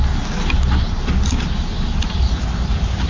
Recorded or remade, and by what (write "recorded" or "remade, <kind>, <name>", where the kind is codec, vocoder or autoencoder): recorded